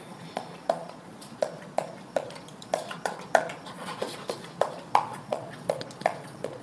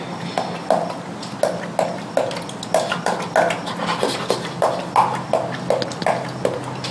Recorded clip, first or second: second